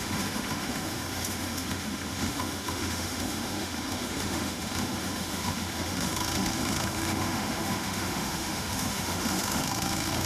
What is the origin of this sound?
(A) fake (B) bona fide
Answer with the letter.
A